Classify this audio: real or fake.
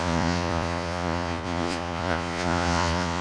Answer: fake